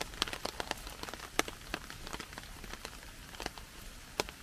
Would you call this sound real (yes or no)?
yes